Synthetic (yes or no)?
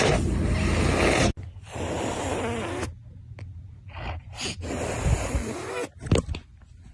no